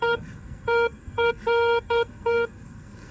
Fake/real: fake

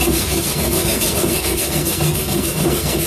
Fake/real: fake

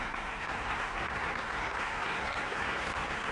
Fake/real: fake